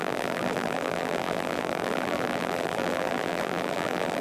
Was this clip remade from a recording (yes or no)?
yes